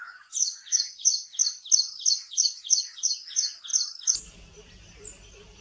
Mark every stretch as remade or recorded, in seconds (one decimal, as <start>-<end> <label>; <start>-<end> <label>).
0.0-1.1 remade; 1.1-2.1 recorded; 2.1-3.7 remade; 3.7-5.6 recorded